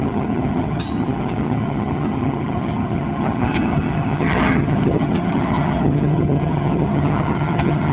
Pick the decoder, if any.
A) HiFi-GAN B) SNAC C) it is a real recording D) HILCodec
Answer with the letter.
A